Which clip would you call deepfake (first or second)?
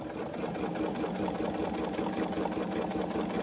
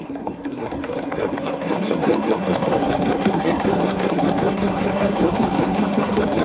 second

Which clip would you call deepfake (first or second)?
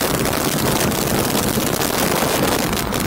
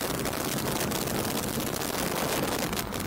first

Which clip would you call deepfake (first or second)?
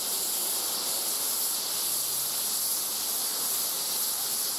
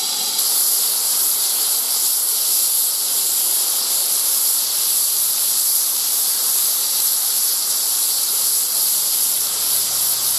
second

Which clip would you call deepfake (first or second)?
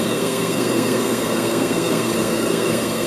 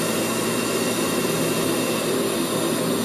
first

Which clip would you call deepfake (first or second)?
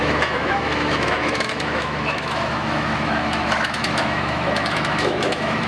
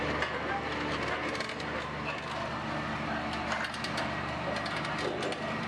first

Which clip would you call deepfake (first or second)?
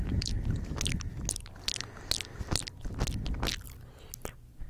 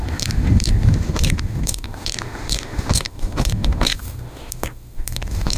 second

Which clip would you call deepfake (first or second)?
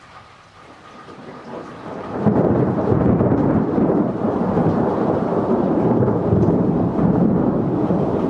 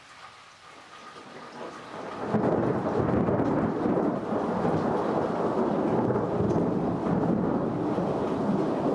first